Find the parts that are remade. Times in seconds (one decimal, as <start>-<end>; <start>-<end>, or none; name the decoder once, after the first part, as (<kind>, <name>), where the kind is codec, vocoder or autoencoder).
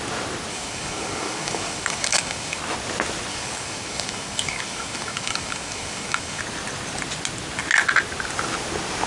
0.5-2.6 (codec, DAC); 3.3-6.4